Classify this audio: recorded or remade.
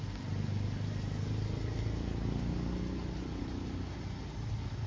recorded